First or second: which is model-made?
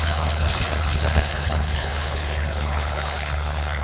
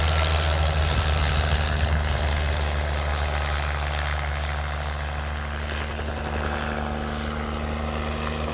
first